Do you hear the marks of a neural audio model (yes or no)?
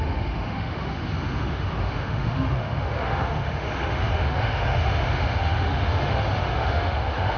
yes